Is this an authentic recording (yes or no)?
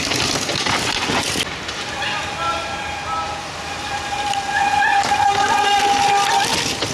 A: yes